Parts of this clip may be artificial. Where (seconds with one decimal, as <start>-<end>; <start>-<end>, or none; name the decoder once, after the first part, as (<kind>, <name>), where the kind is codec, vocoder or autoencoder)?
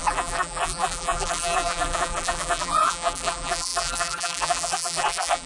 0.0-5.5 (vocoder, BigVGAN v2)